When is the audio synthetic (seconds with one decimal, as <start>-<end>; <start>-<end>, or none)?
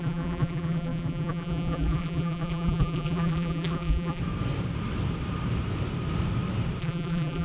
0.0-4.2; 6.8-7.4